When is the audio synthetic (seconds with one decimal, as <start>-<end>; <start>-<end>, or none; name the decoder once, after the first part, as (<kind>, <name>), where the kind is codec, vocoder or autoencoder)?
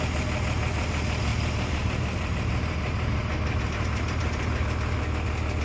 1.3-4.4 (vocoder, BigVGAN v2)